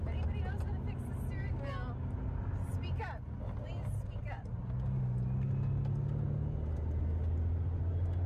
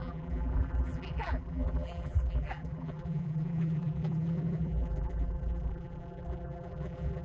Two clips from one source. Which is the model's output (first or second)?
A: second